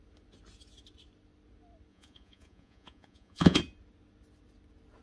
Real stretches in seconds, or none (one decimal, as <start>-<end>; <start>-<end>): 0.0-1.9; 3.6-5.0